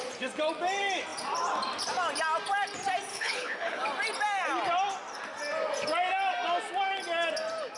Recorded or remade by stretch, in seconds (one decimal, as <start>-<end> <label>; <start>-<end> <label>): 0.0-3.1 recorded; 3.1-3.8 remade; 3.8-7.8 recorded